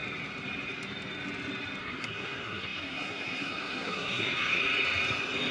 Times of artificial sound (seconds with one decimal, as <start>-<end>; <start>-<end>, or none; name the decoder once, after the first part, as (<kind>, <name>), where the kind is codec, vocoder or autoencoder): 1.8-4.6 (codec, SNAC)